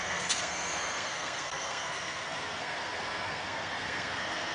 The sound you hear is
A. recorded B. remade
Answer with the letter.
B